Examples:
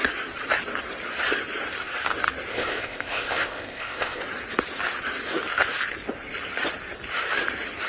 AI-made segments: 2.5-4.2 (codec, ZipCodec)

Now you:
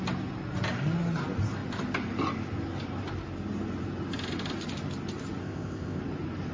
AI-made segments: 5.4-6.0 (codec, ZipCodec)

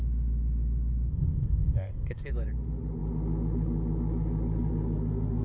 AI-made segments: 1.1-2.3 (codec, ZipCodec)

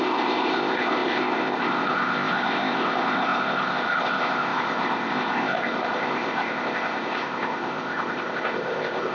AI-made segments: 0.0-9.1 (codec, ZipCodec)